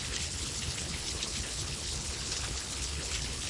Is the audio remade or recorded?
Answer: remade